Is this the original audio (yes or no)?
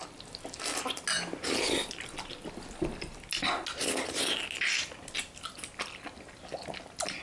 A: yes